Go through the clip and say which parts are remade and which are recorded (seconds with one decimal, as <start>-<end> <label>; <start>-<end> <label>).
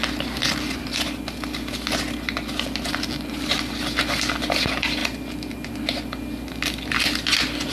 0.0-7.7 recorded